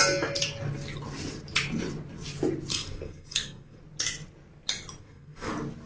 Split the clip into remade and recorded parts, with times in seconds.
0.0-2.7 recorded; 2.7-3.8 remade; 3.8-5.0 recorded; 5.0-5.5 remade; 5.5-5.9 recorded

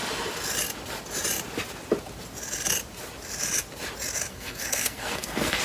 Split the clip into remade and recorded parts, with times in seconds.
0.0-4.3 recorded; 4.3-5.6 remade

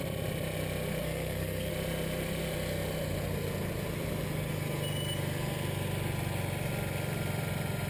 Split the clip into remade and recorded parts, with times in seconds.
0.0-1.0 recorded; 1.0-1.7 remade; 1.7-7.9 recorded